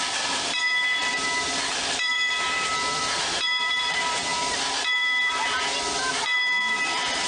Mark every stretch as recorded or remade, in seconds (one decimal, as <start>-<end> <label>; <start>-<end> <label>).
0.0-7.3 remade